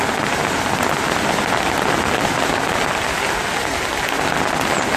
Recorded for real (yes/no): yes